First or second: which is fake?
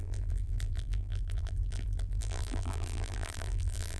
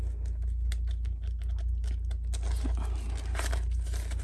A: first